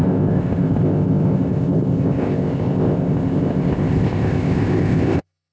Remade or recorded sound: remade